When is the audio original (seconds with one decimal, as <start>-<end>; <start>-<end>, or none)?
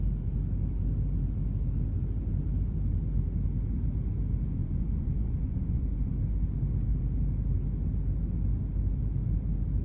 0.0-4.6; 6.1-9.8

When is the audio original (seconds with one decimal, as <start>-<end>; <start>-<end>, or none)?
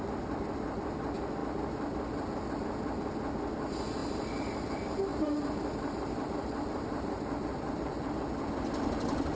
0.0-4.0; 4.6-5.1; 8.2-9.4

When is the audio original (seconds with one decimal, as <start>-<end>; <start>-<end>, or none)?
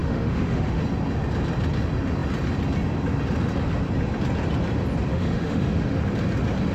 0.8-5.1; 6.0-6.7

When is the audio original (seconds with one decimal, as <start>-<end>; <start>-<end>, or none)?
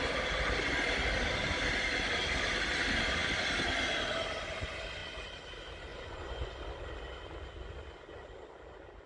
0.0-5.9; 6.5-9.1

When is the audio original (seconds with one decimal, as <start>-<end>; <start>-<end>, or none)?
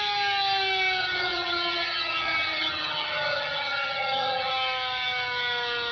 0.0-1.0; 4.5-5.9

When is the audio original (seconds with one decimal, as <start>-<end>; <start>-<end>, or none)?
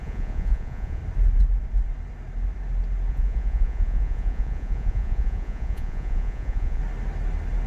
1.0-3.1; 6.8-7.7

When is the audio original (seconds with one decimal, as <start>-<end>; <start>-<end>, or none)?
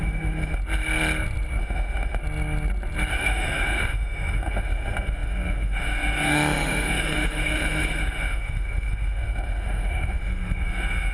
0.6-1.6; 2.2-3.1